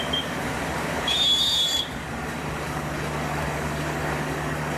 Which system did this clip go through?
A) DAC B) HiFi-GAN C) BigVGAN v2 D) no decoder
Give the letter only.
A